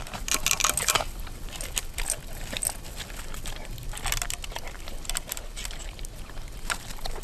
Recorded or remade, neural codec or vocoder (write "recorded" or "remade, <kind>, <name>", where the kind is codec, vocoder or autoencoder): recorded